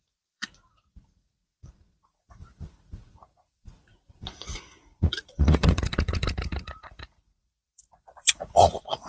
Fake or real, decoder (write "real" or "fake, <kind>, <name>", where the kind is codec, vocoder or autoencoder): fake, vocoder, Vocos